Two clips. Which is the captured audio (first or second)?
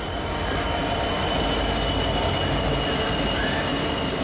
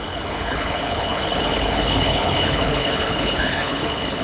first